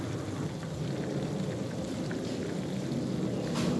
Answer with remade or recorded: recorded